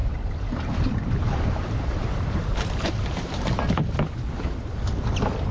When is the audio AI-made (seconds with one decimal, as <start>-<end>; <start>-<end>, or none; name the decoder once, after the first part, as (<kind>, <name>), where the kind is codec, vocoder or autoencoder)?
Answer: 0.0-3.3 (vocoder, BigVGAN v2)